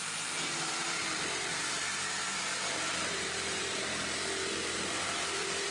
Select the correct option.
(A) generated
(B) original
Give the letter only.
A